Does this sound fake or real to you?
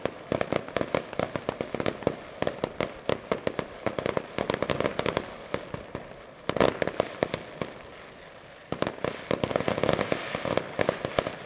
real